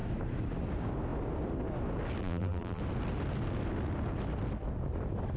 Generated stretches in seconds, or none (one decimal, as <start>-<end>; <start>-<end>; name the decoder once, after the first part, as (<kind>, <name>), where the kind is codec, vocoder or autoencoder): 2.2-2.8 (vocoder, BigVGAN v2)